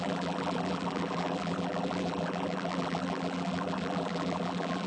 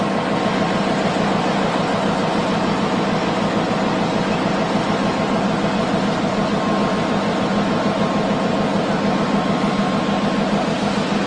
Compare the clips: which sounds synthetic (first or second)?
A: first